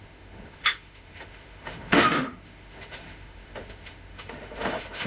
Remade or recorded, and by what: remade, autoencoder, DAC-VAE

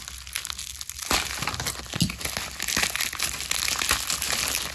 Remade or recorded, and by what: recorded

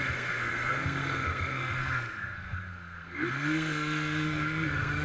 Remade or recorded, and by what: remade, codec, SNAC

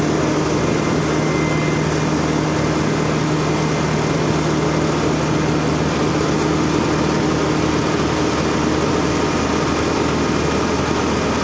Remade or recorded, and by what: recorded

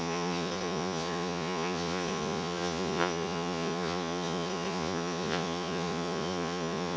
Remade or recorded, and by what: remade, vocoder, Vocos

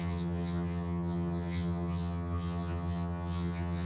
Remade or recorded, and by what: remade, vocoder, HiFi-GAN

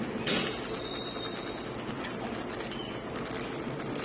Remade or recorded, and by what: recorded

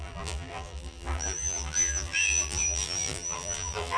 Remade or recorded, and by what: remade, vocoder, BigVGAN v2